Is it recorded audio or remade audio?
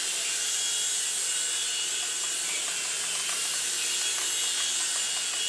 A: recorded